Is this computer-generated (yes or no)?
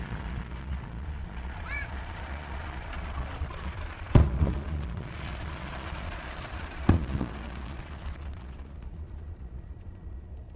yes